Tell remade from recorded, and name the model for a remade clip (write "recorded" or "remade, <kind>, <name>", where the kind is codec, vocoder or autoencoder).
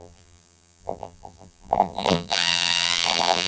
remade, vocoder, BigVGAN v2